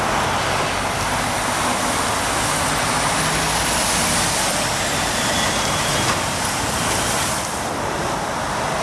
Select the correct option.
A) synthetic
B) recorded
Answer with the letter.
B